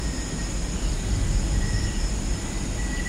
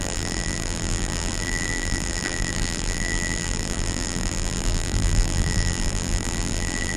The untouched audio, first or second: first